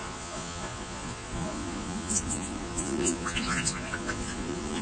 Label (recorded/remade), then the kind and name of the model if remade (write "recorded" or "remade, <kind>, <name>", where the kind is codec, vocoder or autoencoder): remade, vocoder, Vocos